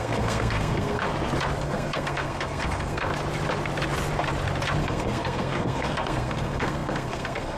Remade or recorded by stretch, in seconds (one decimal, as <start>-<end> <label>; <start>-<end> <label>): 0.0-1.0 remade; 1.0-1.6 recorded; 1.6-3.1 remade; 3.1-4.8 recorded; 4.8-7.6 remade